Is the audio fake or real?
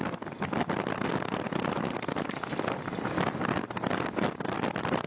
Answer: fake